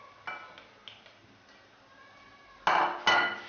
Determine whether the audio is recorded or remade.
recorded